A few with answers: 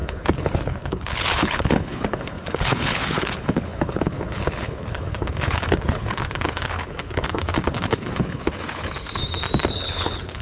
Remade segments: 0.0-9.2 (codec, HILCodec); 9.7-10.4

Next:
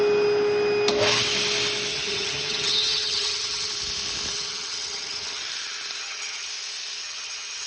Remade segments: 1.9-3.7 (vocoder, HiFi-GAN); 4.3-5.4; 6.0-6.5; 7.0-7.7

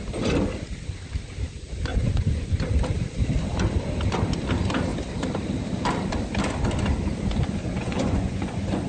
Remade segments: 1.9-2.6 (vocoder, Vocos); 7.6-8.9

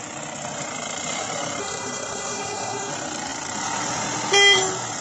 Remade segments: 1.6-2.9 (codec, SNAC)

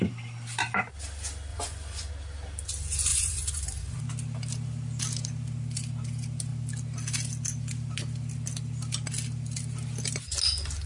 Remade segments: 1.5-2.1 (vocoder, Vocos); 3.1-4.0